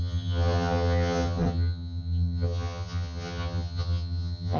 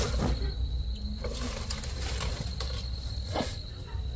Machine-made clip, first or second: first